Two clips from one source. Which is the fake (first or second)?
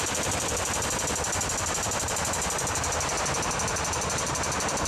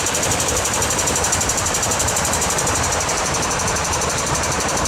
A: second